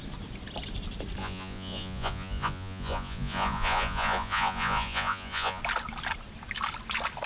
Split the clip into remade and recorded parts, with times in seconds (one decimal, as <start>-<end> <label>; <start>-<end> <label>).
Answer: 0.0-1.2 recorded; 1.2-5.6 remade; 5.6-7.3 recorded